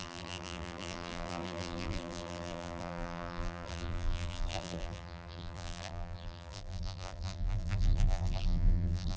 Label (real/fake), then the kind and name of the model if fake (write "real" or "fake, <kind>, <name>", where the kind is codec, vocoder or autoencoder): fake, vocoder, BigVGAN v2